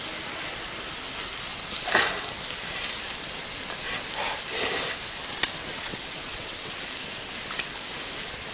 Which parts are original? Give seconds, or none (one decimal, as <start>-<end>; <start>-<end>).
0.0-5.7; 6.8-8.5